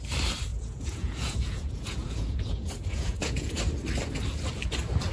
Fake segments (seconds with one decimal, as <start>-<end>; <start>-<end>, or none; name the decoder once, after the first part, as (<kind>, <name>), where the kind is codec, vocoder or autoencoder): 0.5-3.6 (vocoder, Vocos)